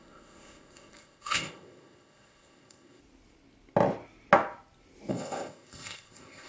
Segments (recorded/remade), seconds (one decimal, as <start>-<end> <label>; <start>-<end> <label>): 0.0-3.0 remade; 3.0-5.1 recorded; 5.1-6.5 remade